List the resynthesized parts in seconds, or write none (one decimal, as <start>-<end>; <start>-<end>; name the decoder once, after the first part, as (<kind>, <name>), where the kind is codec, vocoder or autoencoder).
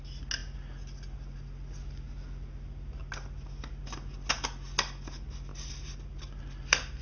none